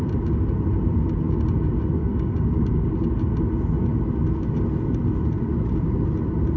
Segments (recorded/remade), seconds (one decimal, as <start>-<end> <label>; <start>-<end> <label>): 0.0-2.0 recorded; 2.0-2.9 remade; 2.9-6.6 recorded